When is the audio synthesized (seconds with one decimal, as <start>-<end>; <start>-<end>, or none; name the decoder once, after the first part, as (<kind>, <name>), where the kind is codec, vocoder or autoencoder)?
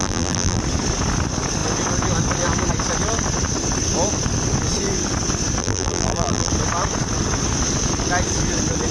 0.0-0.6 (vocoder, BigVGAN v2); 5.6-6.5